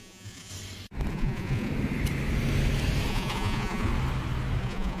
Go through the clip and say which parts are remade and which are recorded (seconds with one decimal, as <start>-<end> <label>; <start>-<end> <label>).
0.0-0.5 remade; 0.5-1.1 recorded; 1.1-1.7 remade; 1.7-3.1 recorded; 3.1-3.9 remade; 3.9-4.6 recorded; 4.6-5.0 remade